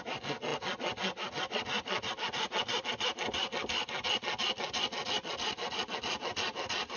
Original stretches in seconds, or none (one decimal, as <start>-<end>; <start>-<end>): 0.0-7.0